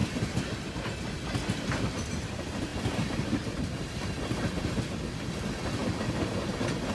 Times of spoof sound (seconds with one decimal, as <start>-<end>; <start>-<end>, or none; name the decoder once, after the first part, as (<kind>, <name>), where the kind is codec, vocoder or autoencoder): none